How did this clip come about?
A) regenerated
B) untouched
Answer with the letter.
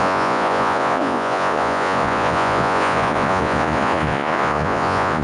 A